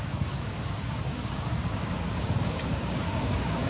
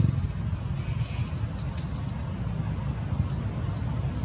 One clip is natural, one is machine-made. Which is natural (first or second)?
second